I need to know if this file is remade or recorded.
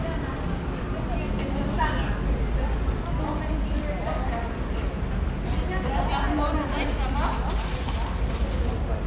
recorded